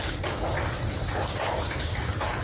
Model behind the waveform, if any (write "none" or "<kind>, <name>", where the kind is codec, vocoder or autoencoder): none